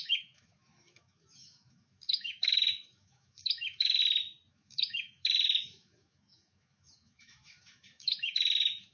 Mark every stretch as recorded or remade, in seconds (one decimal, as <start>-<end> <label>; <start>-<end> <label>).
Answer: 0.0-4.0 remade; 4.0-4.5 recorded; 4.5-8.9 remade